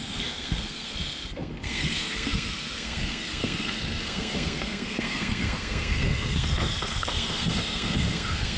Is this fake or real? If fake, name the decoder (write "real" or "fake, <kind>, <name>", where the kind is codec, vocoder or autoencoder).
fake, codec, SNAC